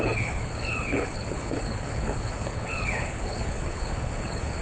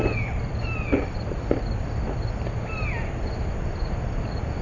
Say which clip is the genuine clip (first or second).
second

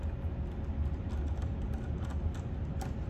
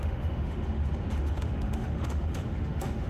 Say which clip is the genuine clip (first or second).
first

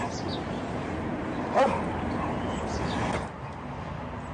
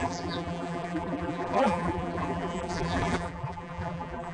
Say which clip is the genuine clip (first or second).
first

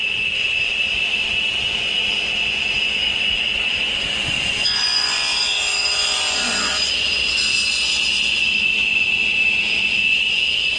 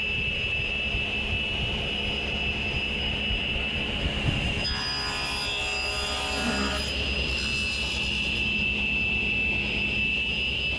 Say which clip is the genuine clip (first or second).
second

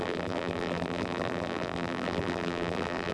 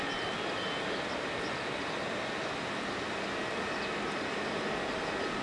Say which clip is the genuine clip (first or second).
second